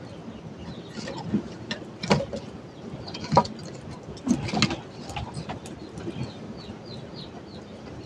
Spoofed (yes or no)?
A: no